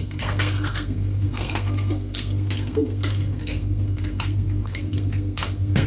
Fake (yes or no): yes